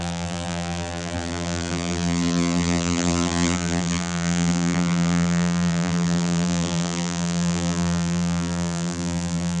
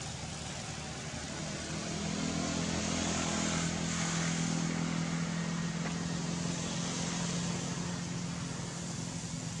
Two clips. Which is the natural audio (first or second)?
second